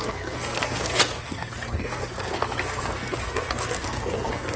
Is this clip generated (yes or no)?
yes